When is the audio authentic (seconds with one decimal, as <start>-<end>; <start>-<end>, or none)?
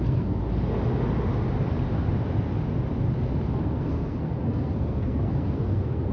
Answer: 0.4-3.5